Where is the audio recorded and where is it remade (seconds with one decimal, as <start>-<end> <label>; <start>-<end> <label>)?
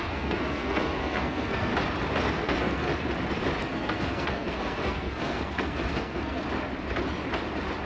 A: 0.0-1.7 remade; 1.7-2.3 recorded; 2.3-2.9 remade; 2.9-3.6 recorded; 3.6-6.4 remade; 6.4-7.9 recorded